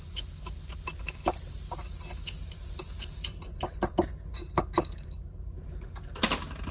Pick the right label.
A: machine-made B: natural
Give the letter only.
A